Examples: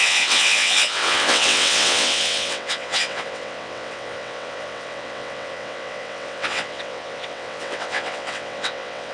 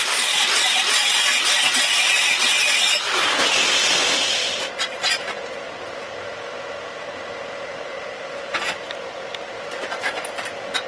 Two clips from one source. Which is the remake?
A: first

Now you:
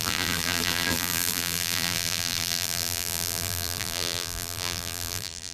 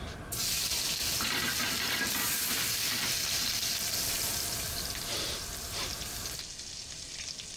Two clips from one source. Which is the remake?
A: first